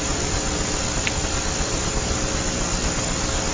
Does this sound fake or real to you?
real